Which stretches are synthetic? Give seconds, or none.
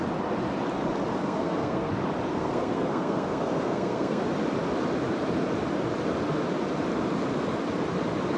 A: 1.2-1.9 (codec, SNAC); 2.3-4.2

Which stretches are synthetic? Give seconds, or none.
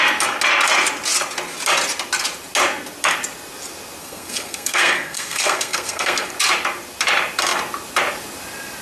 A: 4.0-6.3 (codec, SNAC)